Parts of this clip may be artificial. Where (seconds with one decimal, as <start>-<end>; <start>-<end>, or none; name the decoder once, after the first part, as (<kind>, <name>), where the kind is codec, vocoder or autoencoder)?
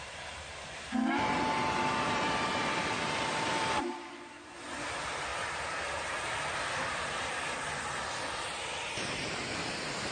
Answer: 0.0-5.3 (vocoder, BigVGAN v2); 9.3-10.1